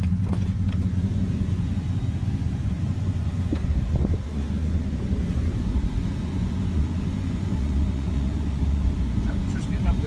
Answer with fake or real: fake